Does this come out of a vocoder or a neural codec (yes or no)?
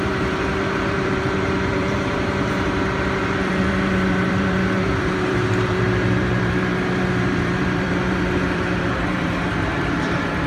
yes